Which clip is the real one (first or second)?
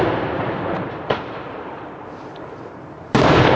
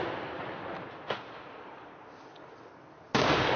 second